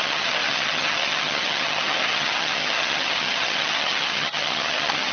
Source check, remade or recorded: remade